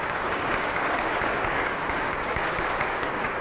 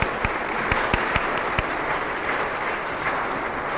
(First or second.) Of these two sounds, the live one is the second